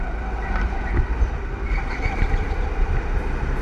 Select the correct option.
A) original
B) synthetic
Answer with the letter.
A